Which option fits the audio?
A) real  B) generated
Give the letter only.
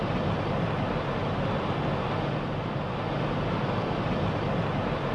A